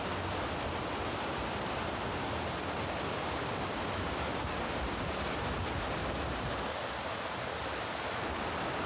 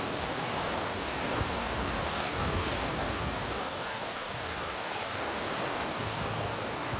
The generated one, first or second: second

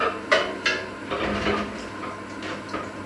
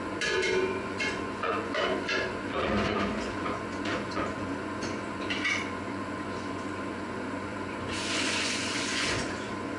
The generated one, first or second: second